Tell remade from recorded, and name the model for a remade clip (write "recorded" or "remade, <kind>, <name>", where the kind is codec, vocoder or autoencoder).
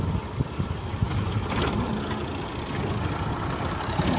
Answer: recorded